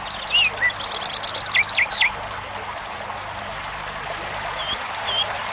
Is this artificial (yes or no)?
no